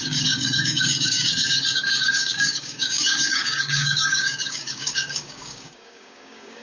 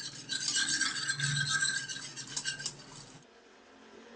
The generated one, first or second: first